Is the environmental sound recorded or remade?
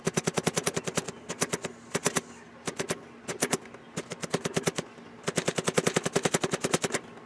recorded